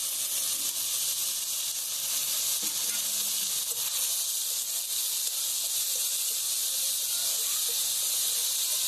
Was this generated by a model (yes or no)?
no